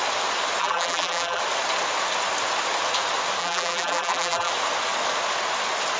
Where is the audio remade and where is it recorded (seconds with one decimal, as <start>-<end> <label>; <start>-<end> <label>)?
0.0-0.6 recorded; 0.6-1.4 remade; 1.4-3.4 recorded; 3.4-4.5 remade; 4.5-6.0 recorded